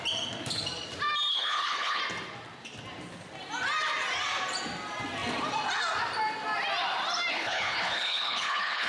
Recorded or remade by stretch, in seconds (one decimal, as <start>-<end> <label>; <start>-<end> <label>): 0.0-1.3 recorded; 1.3-2.0 remade; 2.0-7.3 recorded; 7.3-8.9 remade